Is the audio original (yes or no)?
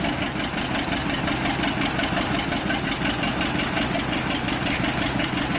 yes